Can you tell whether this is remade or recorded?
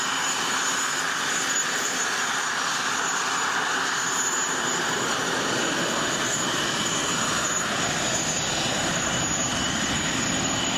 recorded